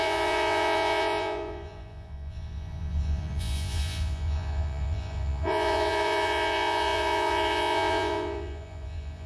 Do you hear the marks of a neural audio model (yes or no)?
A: yes